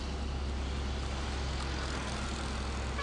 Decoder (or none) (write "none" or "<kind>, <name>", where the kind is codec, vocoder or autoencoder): none